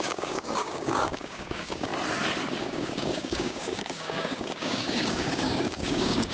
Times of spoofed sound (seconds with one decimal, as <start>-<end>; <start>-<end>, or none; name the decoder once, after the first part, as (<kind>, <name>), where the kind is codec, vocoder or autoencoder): 0.0-1.9 (codec, DAC); 2.6-6.3